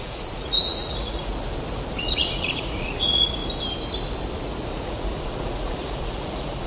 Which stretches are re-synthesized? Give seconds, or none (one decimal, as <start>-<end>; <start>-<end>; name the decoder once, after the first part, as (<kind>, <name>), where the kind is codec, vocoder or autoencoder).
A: 0.0-1.3 (vocoder, Vocos); 2.0-3.4; 4.7-6.7